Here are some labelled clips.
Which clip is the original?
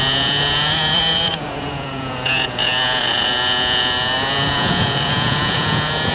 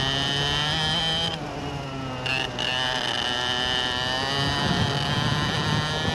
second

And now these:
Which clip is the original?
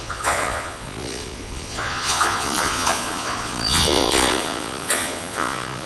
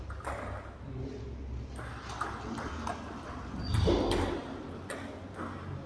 second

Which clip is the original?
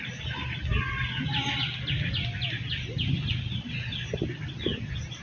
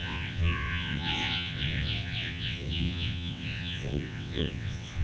first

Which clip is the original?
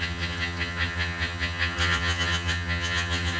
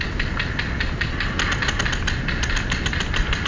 second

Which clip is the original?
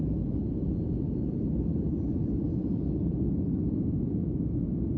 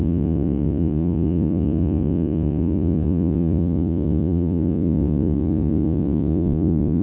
first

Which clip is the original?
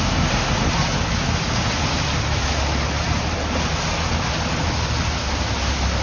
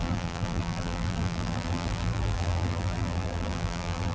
first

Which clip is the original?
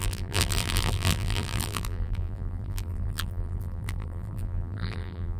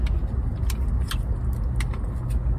second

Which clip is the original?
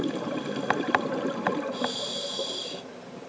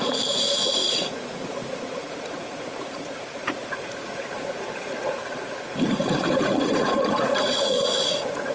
first